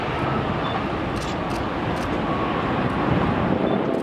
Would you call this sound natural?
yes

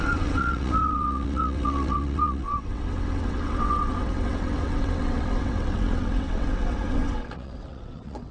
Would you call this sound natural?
no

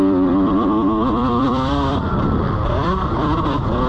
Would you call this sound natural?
no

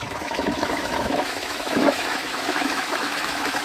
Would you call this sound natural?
no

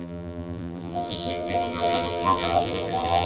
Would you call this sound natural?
no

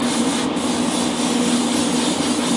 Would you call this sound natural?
yes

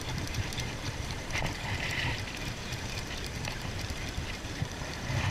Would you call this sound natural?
no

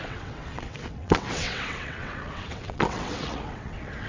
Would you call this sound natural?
no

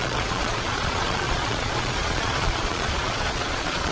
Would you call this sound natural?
no